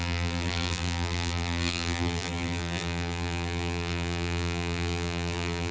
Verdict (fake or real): fake